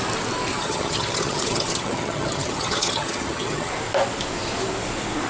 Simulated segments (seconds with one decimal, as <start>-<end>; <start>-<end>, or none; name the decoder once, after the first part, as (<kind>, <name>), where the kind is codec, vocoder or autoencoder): 0.5-3.7 (vocoder, HiFi-GAN)